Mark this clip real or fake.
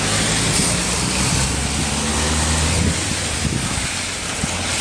real